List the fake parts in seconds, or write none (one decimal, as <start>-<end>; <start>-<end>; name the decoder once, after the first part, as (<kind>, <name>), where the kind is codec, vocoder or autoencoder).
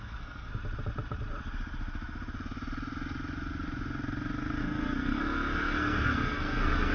0.0-0.6 (codec, SNAC); 4.6-6.9